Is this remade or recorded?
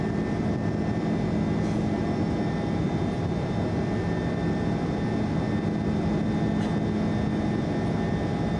recorded